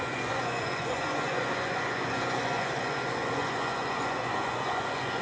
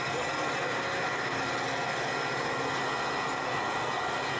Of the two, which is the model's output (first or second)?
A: first